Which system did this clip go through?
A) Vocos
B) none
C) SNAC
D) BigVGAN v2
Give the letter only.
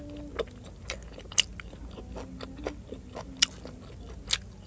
B